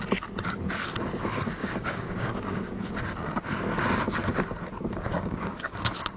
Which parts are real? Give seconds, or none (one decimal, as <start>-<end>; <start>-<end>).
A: 0.0-1.6; 2.8-5.1; 5.7-6.2